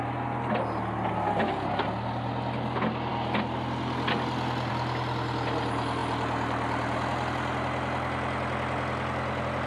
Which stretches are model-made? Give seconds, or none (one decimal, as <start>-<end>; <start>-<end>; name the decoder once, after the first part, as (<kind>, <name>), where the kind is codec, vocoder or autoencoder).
none